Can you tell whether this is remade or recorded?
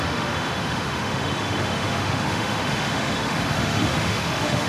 remade